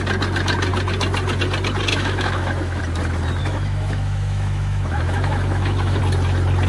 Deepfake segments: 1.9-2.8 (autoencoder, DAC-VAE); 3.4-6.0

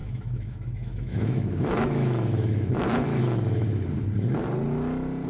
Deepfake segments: 0.0-3.2 (autoencoder, DAC-VAE)